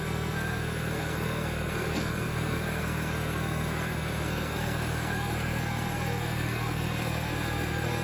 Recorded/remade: remade